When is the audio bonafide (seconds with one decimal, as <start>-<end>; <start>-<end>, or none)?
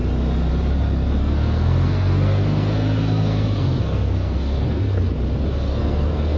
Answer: 0.0-1.2; 5.0-5.7